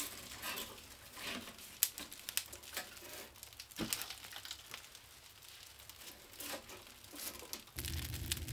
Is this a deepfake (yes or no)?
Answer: no